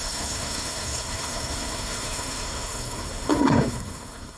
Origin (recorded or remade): remade